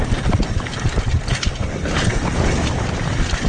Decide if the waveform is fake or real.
real